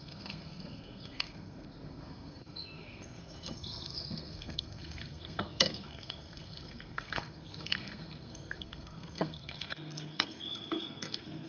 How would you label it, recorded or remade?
remade